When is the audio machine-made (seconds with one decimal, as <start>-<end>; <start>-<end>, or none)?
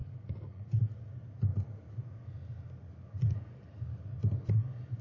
0.0-0.8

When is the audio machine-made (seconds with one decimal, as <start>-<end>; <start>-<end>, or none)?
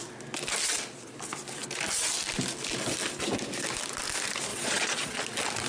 4.5-5.2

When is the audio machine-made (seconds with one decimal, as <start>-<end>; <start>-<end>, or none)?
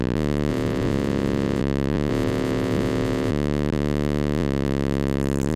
0.5-1.6; 2.1-3.3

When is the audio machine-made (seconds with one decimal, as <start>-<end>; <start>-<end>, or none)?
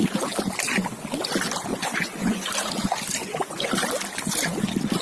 1.7-2.5; 3.2-3.7